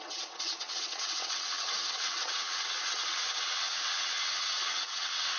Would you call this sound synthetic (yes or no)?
yes